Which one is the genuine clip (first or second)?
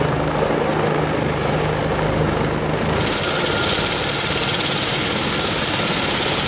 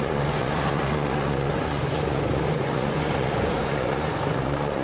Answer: first